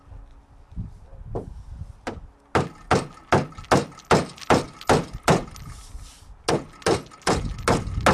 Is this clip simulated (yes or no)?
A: no